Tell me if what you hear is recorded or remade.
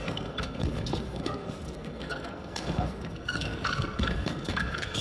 remade